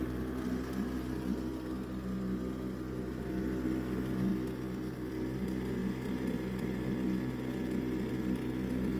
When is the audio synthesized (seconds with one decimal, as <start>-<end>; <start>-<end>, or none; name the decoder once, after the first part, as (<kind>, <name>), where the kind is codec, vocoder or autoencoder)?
none